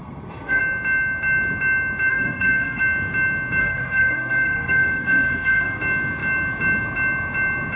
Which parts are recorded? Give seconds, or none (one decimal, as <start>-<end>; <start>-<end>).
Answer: 0.6-2.1; 2.8-3.6; 5.8-7.8